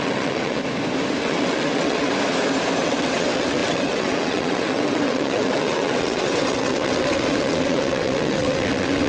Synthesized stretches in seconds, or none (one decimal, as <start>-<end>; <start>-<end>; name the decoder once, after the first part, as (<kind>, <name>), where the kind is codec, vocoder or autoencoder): 0.0-0.6 (vocoder, WaveNeXt); 1.2-2.1; 2.8-9.1